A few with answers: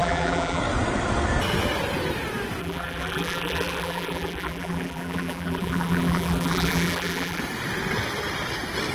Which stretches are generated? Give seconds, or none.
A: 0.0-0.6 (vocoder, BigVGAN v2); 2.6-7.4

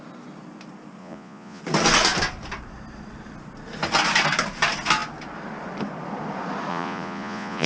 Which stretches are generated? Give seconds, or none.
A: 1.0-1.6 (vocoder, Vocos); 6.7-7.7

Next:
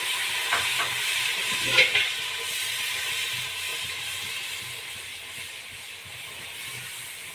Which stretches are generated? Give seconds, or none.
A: 0.7-2.0 (vocoder, BigVGAN v2); 3.7-4.4; 5.1-5.9

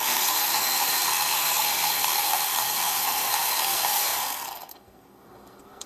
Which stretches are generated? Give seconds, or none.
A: 0.0-5.9 (codec, SNAC)

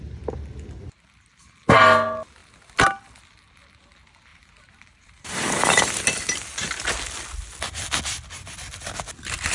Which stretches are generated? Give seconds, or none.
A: 4.3-5.9 (vocoder, BigVGAN v2)

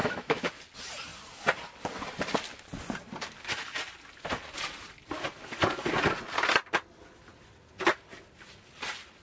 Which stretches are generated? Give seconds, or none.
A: 0.0-0.5 (autoencoder, DAC-VAE)

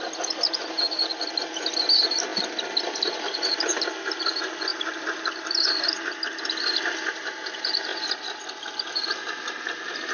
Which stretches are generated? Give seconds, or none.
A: 4.7-5.8 (vocoder, BigVGAN v2)